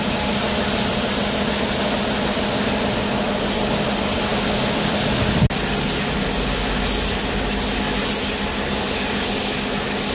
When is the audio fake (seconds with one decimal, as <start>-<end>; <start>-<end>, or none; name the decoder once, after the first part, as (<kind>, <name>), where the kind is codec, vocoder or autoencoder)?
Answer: none